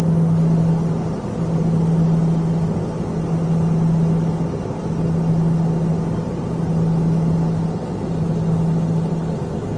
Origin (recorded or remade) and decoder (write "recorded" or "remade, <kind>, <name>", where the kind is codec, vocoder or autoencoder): recorded